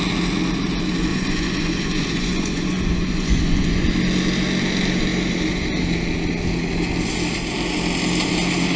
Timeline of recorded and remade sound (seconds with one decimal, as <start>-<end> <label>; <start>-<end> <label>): 0.0-1.1 recorded; 1.1-3.9 remade; 3.9-8.8 recorded